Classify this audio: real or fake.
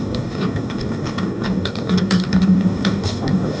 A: fake